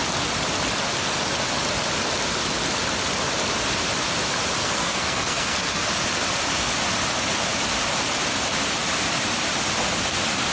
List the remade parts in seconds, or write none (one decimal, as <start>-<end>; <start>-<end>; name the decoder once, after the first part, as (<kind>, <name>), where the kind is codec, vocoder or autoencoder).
4.6-5.9 (codec, SNAC)